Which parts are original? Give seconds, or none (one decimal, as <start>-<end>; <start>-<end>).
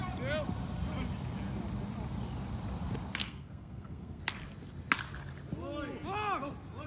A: 0.0-3.2; 4.2-6.9